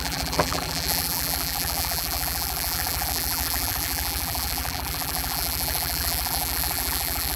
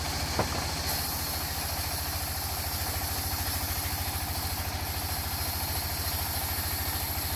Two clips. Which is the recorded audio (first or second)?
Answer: second